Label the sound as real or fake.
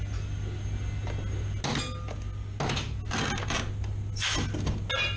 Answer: real